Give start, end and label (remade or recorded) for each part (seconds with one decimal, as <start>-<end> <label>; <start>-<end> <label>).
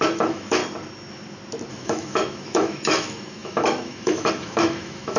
0.0-0.6 remade; 0.6-1.7 recorded; 1.7-5.2 remade